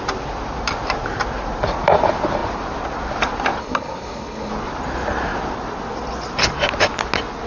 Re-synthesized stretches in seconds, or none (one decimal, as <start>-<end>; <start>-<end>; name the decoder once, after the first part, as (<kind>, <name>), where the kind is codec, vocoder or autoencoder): 3.6-4.5 (codec, HILCodec)